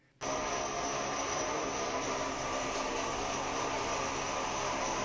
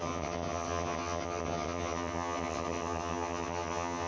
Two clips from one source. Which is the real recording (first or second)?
first